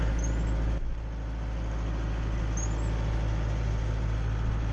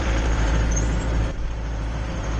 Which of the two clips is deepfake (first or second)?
second